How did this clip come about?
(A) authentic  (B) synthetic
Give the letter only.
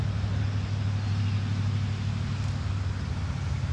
A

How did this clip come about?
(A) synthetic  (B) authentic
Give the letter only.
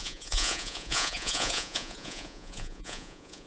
A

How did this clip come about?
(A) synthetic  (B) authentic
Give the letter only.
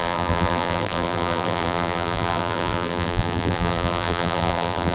A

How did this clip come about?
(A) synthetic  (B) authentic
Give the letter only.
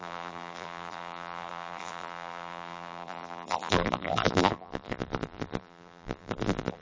A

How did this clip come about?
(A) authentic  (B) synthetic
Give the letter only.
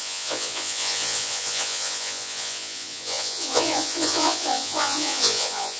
B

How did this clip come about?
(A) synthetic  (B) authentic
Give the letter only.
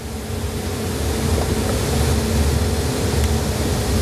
B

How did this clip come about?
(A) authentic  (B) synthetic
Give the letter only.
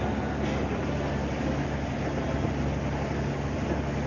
A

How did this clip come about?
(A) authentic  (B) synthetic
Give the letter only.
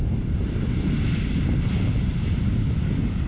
A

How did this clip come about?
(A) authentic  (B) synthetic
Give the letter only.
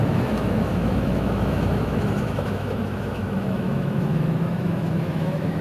B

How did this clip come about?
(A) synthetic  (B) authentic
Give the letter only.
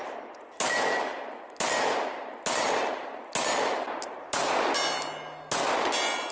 B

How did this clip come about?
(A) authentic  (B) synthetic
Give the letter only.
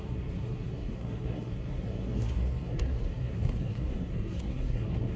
B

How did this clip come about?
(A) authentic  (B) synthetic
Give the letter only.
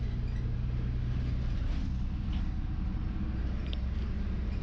A